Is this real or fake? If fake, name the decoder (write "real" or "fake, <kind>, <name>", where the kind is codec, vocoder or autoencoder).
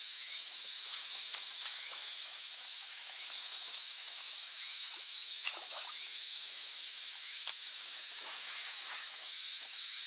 fake, autoencoder, DAC-VAE